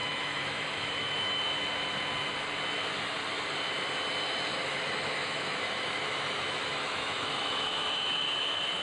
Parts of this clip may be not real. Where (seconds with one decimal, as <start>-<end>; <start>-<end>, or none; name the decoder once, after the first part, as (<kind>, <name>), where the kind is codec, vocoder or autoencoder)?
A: 0.0-1.4 (autoencoder, DAC-VAE); 4.5-8.8